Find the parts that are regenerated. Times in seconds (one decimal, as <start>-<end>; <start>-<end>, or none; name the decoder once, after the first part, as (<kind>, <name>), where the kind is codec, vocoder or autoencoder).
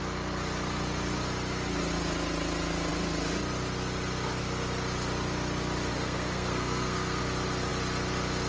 5.9-7.2 (codec, SNAC)